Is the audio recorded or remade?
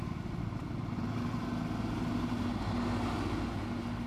recorded